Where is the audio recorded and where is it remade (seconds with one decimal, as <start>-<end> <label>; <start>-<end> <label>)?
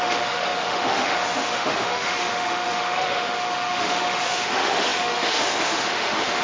0.0-6.4 remade